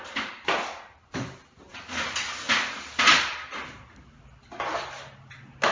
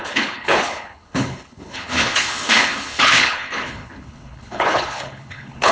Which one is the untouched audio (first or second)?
first